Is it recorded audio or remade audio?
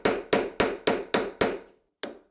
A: recorded